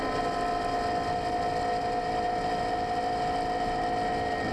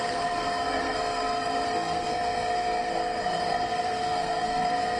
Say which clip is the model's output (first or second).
second